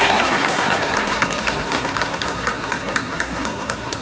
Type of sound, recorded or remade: remade